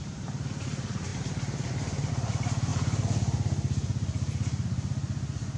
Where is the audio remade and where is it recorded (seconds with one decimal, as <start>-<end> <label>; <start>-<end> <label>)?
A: 0.0-5.6 recorded